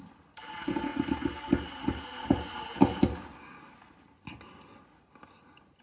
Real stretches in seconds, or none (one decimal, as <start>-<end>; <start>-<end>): 0.0-5.8